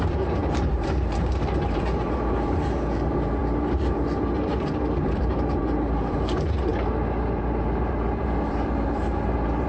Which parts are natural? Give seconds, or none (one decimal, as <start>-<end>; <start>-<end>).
6.7-7.4